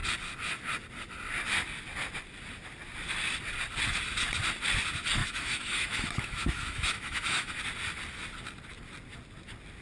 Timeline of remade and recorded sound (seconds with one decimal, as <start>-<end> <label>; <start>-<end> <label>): 0.0-5.2 recorded; 5.2-7.6 remade; 7.6-9.8 recorded